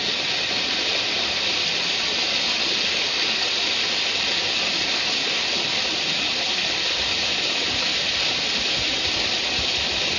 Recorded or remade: recorded